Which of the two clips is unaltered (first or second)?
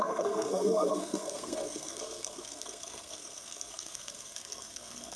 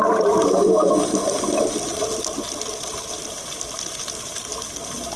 second